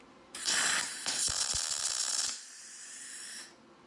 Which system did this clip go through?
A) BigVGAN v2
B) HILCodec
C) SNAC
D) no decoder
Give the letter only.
D